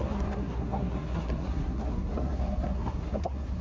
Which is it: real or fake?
fake